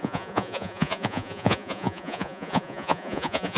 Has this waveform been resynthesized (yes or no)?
yes